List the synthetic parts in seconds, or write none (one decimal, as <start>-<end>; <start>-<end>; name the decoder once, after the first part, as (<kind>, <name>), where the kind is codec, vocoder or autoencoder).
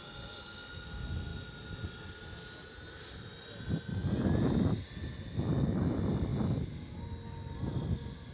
4.0-4.7 (vocoder, BigVGAN v2)